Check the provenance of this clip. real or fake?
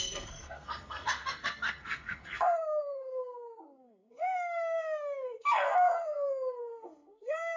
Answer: fake